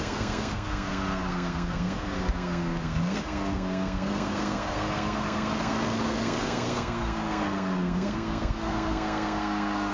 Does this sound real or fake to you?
fake